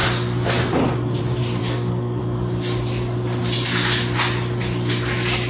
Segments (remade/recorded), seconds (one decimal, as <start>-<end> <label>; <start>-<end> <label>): 0.0-1.6 recorded; 1.6-2.2 remade; 2.2-5.5 recorded